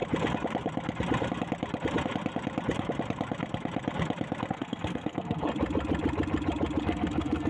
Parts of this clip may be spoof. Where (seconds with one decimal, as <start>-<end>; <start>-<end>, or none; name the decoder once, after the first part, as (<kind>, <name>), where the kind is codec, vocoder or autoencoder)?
4.5-5.5 (codec, SNAC); 6.8-7.5